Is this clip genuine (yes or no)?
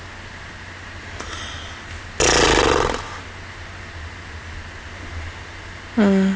yes